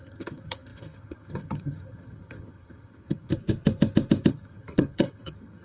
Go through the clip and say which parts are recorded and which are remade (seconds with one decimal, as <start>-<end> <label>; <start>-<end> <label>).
0.0-3.3 remade; 3.3-4.3 recorded; 4.3-5.6 remade

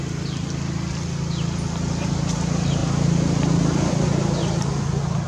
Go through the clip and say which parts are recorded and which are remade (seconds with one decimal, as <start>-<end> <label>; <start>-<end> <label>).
0.0-5.3 recorded

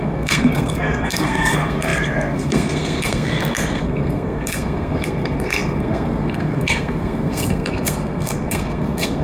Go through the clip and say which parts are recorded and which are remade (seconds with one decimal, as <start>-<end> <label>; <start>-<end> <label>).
0.0-9.2 remade

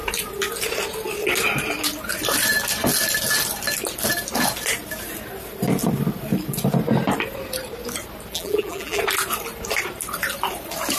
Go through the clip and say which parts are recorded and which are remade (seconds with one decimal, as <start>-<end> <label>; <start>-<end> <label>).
0.0-8.3 recorded; 8.3-9.0 remade; 9.0-11.0 recorded

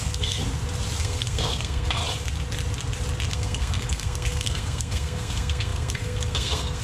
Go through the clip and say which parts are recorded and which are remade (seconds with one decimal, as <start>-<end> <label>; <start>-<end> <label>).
0.0-0.4 remade; 0.4-1.0 recorded; 1.0-2.0 remade; 2.0-3.3 recorded; 3.3-6.8 remade

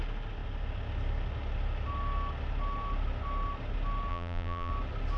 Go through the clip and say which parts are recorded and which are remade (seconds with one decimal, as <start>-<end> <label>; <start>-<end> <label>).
0.0-4.1 recorded; 4.1-4.7 remade; 4.7-5.2 recorded

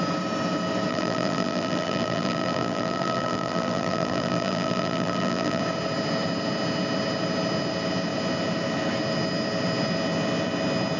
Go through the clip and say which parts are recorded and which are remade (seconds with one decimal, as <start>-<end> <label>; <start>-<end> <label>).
0.0-0.9 recorded; 0.9-5.6 remade; 5.6-11.0 recorded